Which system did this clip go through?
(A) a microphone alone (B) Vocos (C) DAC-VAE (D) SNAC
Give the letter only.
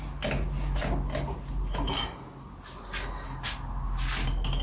A